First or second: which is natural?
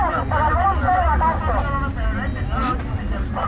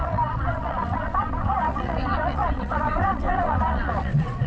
first